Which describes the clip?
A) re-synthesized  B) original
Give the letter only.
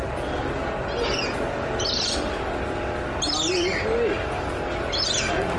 B